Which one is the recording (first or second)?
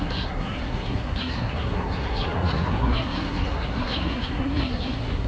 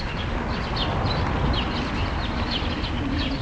second